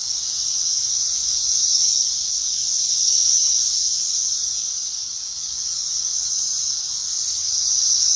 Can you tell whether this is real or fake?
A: fake